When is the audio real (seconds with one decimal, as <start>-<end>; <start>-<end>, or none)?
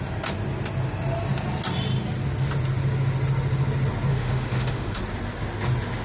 0.0-4.1; 5.0-6.0